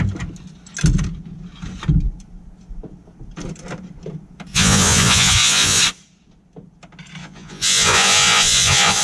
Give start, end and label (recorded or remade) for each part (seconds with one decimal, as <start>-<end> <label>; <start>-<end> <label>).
0.0-4.5 recorded; 4.5-5.8 remade; 5.8-7.2 recorded; 7.2-9.0 remade